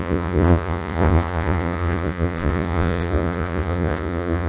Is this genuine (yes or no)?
no